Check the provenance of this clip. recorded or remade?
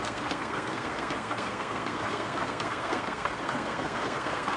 remade